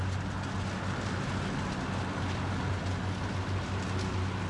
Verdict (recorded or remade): recorded